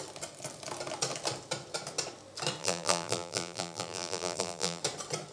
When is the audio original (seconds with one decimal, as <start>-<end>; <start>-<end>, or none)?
0.0-2.6; 4.8-5.3